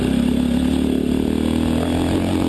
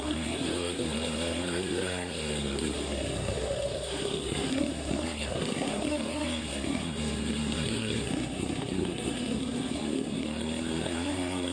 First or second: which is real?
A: first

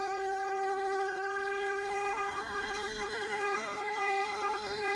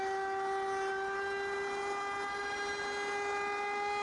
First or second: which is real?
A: second